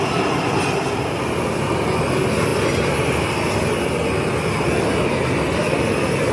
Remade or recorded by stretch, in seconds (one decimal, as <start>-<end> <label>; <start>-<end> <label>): 0.0-6.3 recorded